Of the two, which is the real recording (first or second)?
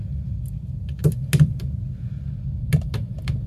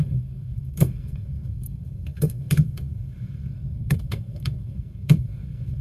first